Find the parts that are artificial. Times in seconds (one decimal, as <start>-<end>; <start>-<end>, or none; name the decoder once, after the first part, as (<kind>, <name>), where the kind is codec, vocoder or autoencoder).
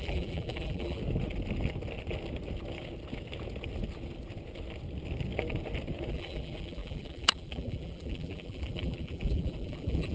0.0-1.0 (vocoder, BigVGAN v2); 6.1-10.1